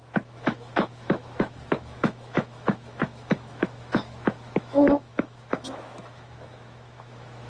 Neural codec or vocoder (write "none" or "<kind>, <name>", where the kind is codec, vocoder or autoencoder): autoencoder, DAC-VAE